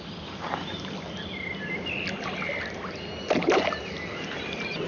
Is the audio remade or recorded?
recorded